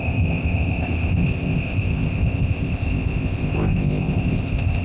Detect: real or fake fake